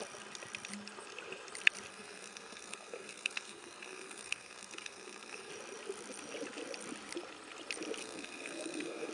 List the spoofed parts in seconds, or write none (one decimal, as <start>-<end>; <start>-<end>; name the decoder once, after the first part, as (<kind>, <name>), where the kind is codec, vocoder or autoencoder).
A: 1.9-5.5 (codec, SNAC); 8.0-9.1